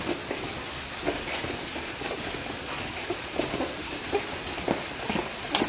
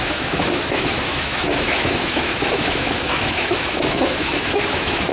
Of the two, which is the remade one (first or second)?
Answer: second